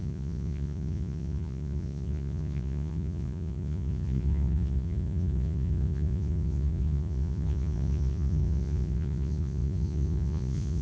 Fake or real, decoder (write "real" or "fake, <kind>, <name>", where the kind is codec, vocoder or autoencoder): fake, vocoder, Vocos